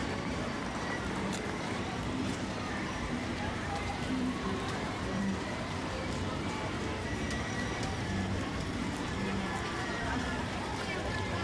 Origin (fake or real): fake